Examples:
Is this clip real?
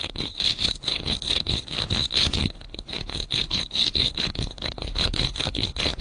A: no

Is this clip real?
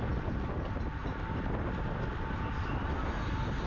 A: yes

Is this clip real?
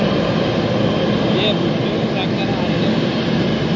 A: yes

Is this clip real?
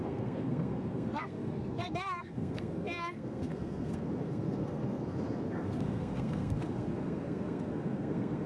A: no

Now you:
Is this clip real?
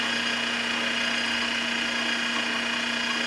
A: yes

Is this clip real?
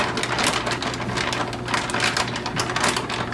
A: yes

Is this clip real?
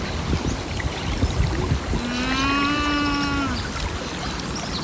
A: yes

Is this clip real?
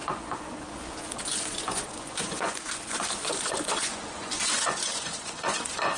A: no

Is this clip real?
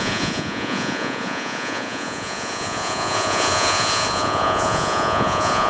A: no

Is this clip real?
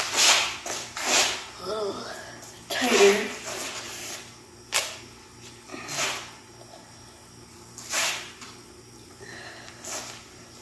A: yes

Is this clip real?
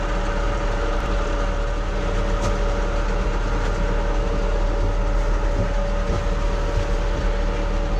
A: yes